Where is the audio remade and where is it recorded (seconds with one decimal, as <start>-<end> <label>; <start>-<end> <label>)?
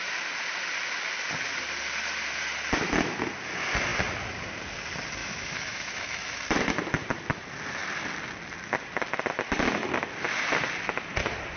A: 0.0-5.2 recorded; 5.2-6.4 remade; 6.4-11.6 recorded